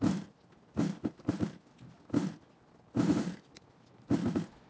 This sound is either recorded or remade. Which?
recorded